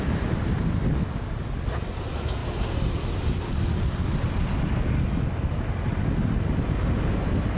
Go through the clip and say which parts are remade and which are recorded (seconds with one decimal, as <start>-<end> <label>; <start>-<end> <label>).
0.0-7.6 recorded